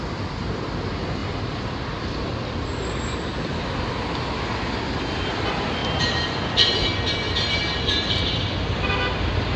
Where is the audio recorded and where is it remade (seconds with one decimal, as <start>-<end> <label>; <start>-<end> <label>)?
0.0-1.2 recorded; 1.2-2.0 remade; 2.0-5.8 recorded; 5.8-8.9 remade; 8.9-9.6 recorded